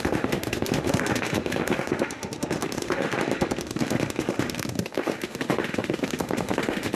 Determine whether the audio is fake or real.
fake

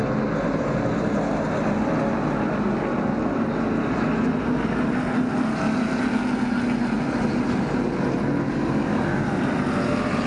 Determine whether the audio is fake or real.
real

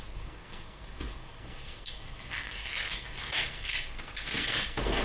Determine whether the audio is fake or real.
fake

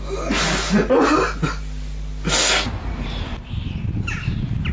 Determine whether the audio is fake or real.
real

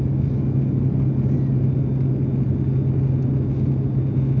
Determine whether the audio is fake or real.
real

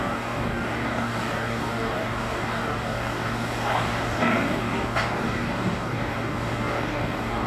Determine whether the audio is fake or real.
fake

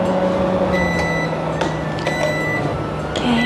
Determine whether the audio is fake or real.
real